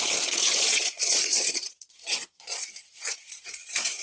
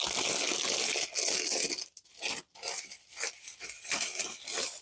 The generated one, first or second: first